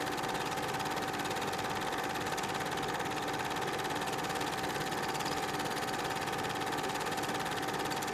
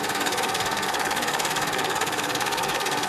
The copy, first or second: second